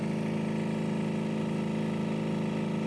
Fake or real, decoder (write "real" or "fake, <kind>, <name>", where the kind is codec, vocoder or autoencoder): real